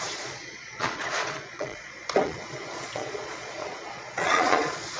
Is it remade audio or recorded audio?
remade